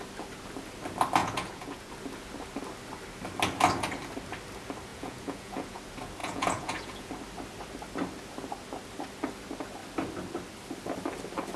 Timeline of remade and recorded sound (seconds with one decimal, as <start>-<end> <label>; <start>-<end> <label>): 0.0-1.2 recorded; 1.2-1.9 remade; 1.9-4.9 recorded; 4.9-5.8 remade; 5.8-6.2 recorded; 6.2-7.1 remade; 7.1-11.6 recorded